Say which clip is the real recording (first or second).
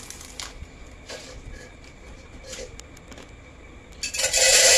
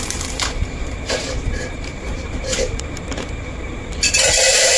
first